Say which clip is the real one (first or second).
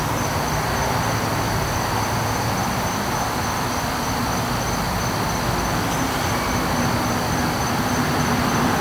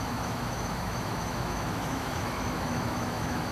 first